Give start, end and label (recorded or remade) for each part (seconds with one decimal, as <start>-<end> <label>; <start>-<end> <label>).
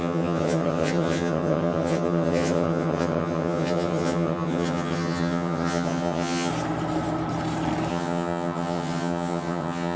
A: 0.0-6.5 remade; 6.5-7.9 recorded; 7.9-10.0 remade